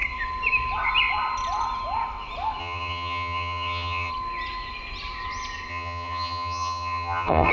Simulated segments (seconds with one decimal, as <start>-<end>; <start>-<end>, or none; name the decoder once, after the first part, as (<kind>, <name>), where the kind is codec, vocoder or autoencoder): 2.6-4.1 (vocoder, HiFi-GAN); 5.7-7.5